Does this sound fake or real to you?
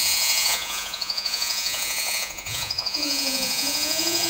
fake